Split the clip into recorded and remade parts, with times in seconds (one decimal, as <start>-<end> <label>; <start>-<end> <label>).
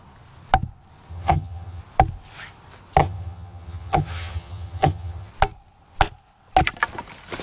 0.0-1.1 recorded; 1.1-1.8 remade; 1.8-3.0 recorded; 3.0-5.3 remade; 5.3-7.4 recorded